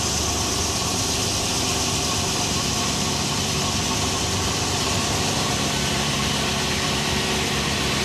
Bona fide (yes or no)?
no